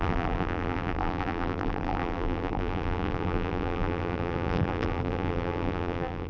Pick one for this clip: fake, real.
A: fake